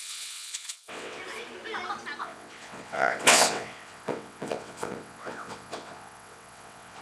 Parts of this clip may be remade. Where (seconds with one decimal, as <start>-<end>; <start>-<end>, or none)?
0.0-1.2; 2.2-7.0